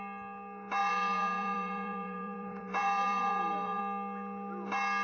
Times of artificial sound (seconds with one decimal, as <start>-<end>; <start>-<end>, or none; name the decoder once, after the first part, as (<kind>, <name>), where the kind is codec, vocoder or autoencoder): 0.8-3.8 (vocoder, Vocos)